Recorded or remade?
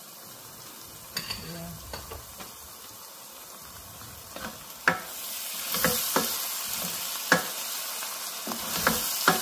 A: recorded